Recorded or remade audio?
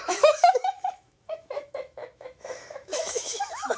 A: remade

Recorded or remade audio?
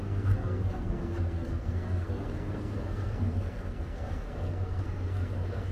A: remade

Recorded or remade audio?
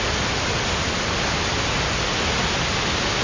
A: recorded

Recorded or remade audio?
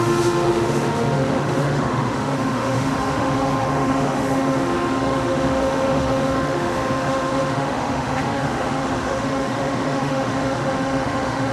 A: remade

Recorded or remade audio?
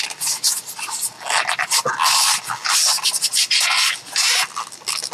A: recorded